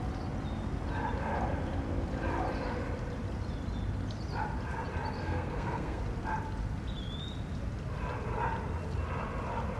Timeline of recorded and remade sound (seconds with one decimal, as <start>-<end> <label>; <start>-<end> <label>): 0.0-5.2 recorded; 5.2-6.0 remade; 6.0-9.8 recorded